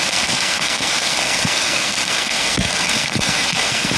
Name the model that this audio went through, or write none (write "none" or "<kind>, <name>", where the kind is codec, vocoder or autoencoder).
codec, SNAC